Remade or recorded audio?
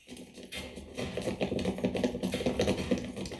recorded